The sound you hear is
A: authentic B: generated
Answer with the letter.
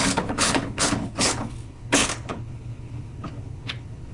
B